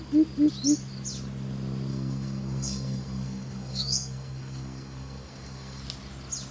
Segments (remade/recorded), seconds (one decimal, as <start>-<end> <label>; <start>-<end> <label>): 0.0-1.9 recorded; 1.9-5.8 remade; 5.8-6.5 recorded